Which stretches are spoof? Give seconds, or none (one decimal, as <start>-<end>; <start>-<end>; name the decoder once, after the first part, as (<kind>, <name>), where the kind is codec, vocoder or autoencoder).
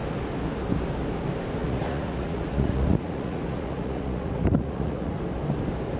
1.6-5.2 (vocoder, Vocos)